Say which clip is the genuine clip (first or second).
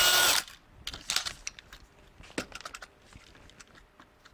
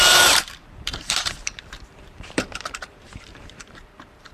first